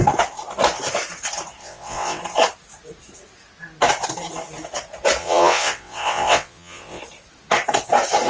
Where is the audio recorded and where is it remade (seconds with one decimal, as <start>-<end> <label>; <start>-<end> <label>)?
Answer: 0.0-1.6 recorded; 1.6-2.2 remade; 2.2-5.2 recorded; 5.2-7.0 remade; 7.0-8.3 recorded